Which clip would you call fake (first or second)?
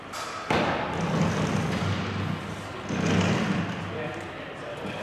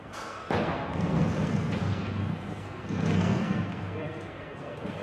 second